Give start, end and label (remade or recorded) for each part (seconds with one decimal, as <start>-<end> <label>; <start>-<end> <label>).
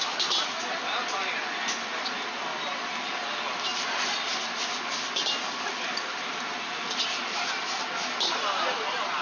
0.0-3.7 recorded; 3.7-7.8 remade; 7.8-9.2 recorded